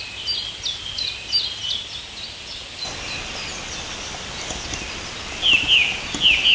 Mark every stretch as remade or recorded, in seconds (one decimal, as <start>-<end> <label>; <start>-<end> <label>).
0.0-1.6 recorded; 1.6-2.7 remade; 2.7-6.5 recorded